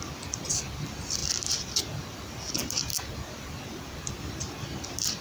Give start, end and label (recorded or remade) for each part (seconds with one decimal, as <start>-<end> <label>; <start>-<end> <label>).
0.0-5.2 recorded